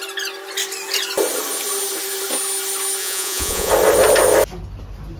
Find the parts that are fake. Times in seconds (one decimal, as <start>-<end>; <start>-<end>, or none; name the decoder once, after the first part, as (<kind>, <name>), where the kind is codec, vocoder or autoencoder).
3.0-3.7 (vocoder, Vocos)